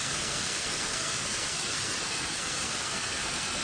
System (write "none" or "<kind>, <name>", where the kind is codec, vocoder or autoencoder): codec, SNAC